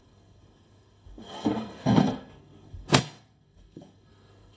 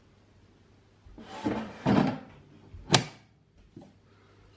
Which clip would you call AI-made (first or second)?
first